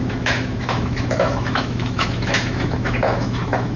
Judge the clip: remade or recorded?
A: remade